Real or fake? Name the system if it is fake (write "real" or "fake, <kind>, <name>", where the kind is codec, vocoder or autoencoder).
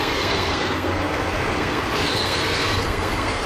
fake, codec, SNAC